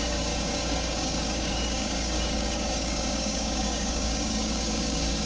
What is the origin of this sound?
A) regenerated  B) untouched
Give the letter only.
A